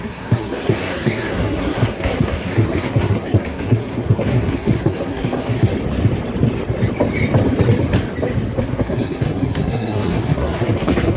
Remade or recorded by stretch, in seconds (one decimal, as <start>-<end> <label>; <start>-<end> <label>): 0.0-5.7 remade; 5.7-8.6 recorded; 8.6-11.2 remade